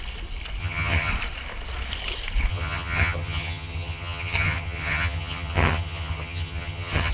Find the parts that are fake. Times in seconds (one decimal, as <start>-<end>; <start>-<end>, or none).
0.6-1.1; 2.5-7.1